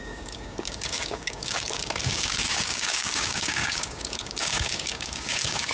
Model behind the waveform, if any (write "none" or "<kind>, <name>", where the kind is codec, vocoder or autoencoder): codec, DAC